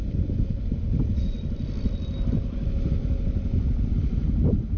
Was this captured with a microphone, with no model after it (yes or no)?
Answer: yes